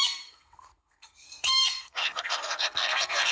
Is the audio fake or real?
fake